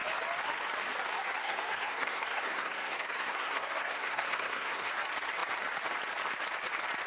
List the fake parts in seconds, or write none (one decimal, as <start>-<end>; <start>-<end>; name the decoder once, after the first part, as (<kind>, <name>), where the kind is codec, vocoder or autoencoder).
1.4-4.9 (codec, SNAC)